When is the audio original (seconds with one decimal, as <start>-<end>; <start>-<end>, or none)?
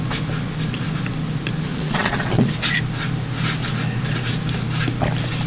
0.0-1.7; 2.5-5.5